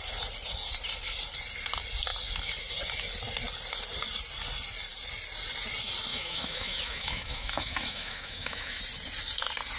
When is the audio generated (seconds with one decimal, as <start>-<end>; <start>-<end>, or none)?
6.1-8.8